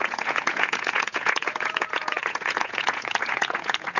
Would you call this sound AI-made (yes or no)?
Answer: yes